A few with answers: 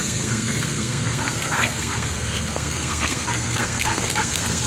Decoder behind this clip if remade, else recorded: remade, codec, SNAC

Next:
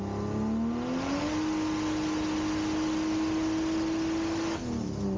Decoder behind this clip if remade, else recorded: recorded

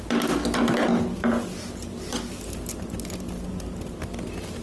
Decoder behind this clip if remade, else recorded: recorded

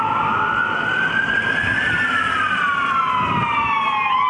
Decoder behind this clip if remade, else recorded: recorded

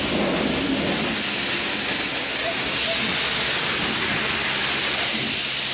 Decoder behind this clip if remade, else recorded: recorded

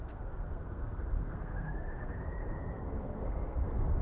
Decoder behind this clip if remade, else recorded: remade, codec, SNAC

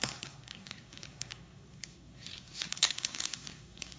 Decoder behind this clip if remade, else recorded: remade, codec, SNAC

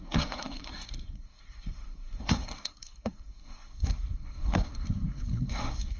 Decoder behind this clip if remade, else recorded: remade, codec, SNAC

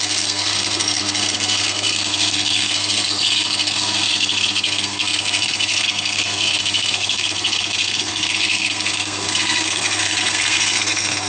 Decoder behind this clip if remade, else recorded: remade, codec, SNAC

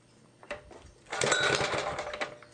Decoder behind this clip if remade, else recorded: recorded